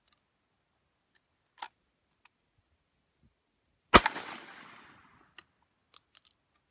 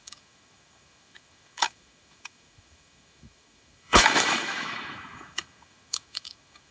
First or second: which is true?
first